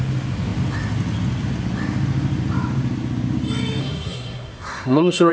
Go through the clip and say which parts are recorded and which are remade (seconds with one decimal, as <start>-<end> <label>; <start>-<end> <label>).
0.0-3.8 recorded; 3.8-5.3 remade

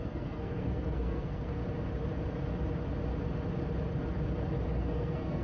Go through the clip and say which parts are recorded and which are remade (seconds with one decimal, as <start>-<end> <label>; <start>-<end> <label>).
0.0-1.6 remade; 1.6-4.8 recorded; 4.8-5.4 remade

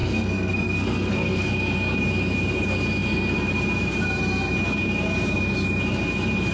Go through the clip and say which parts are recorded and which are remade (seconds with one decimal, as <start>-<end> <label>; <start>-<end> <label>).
0.0-1.5 remade; 1.5-6.5 recorded